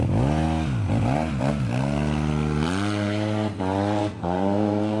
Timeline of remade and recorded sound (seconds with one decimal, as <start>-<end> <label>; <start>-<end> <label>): 0.0-4.0 recorded; 4.0-5.0 remade